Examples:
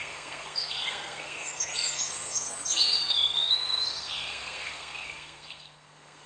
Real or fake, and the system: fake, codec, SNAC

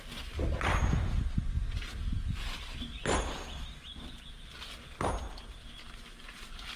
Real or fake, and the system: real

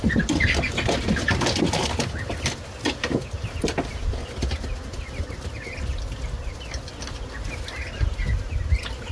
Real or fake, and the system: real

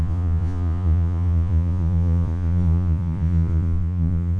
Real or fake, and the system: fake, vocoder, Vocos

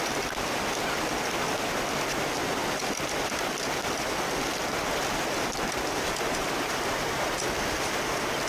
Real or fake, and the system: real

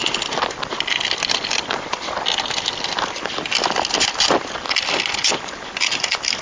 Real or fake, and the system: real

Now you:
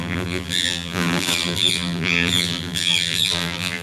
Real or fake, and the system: fake, vocoder, BigVGAN v2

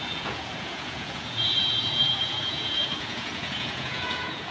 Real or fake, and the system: fake, vocoder, Vocos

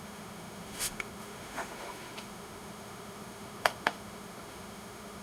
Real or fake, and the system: fake, autoencoder, DAC-VAE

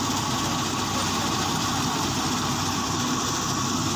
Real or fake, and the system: real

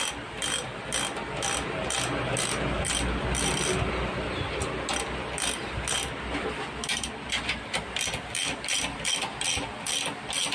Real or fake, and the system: real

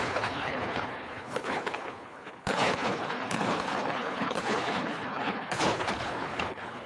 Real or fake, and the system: fake, codec, HILCodec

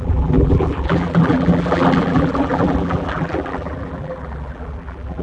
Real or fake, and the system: fake, vocoder, BigVGAN v2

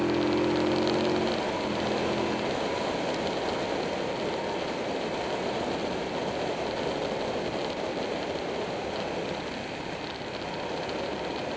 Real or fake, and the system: real